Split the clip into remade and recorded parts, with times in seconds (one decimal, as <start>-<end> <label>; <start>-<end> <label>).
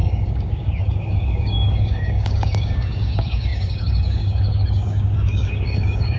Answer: 0.0-6.2 remade